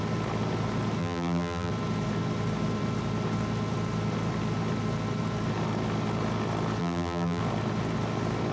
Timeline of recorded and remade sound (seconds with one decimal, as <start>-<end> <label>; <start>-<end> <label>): 0.0-1.0 recorded; 1.0-1.7 remade; 1.7-6.8 recorded; 6.8-7.4 remade; 7.4-8.5 recorded